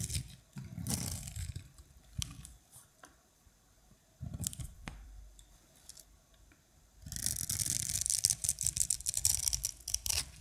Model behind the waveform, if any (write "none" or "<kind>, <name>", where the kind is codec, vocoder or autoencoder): vocoder, BigVGAN v2